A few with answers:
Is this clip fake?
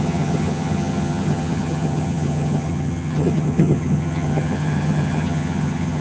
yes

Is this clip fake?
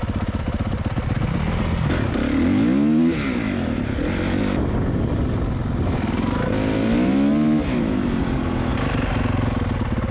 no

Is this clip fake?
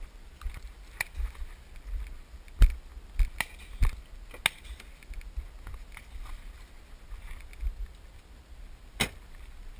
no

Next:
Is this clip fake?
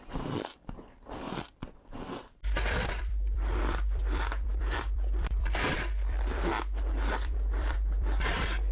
yes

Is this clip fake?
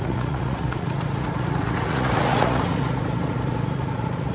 yes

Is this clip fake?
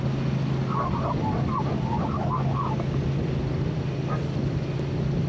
no